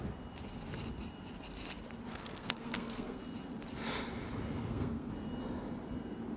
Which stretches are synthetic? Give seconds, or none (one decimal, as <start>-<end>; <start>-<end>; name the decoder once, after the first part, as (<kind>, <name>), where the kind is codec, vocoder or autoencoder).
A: 2.1-3.2 (codec, SNAC); 4.6-5.1